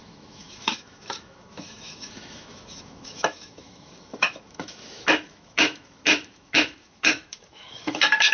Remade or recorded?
remade